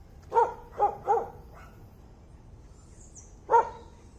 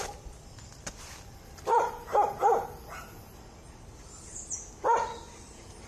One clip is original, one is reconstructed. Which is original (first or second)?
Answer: first